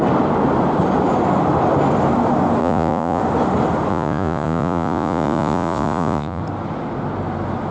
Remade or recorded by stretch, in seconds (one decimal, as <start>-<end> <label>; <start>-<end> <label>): 0.0-2.6 recorded; 2.6-3.2 remade; 3.2-3.9 recorded; 3.9-6.4 remade; 6.4-7.7 recorded